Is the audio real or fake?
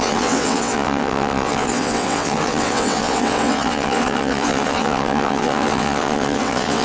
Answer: fake